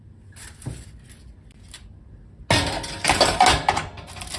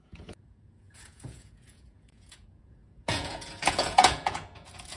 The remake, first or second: second